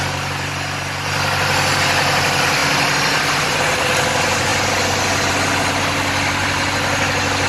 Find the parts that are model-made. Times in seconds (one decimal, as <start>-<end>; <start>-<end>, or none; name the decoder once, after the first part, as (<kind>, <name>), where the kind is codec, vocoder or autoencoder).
none

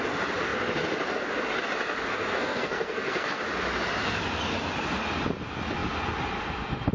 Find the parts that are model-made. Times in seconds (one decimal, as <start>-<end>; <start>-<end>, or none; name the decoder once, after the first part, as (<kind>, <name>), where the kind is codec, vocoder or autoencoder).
2.1-3.4 (codec, SNAC)

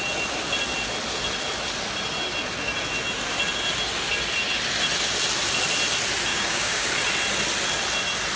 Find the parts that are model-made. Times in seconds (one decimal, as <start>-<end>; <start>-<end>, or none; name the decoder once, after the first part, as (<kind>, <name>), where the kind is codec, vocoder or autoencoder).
6.3-6.9 (codec, DAC)

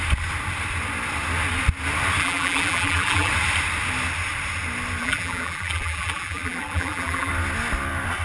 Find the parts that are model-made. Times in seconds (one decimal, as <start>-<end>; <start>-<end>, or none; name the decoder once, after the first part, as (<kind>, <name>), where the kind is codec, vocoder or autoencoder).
2.2-3.3 (vocoder, BigVGAN v2); 5.0-7.3

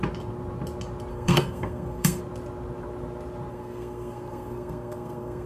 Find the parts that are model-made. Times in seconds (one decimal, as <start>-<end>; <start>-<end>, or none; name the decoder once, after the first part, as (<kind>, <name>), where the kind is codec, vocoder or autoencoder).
1.1-2.2 (codec, SNAC); 3.5-5.5

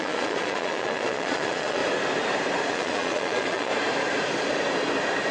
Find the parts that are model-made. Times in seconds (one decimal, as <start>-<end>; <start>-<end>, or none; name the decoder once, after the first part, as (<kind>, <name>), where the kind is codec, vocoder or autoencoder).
0.0-1.8 (vocoder, Vocos); 2.7-3.7

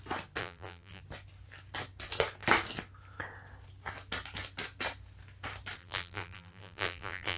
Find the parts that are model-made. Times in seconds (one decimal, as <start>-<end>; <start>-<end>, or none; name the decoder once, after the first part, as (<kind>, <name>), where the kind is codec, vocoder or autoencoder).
0.4-1.0 (vocoder, BigVGAN v2); 5.8-7.4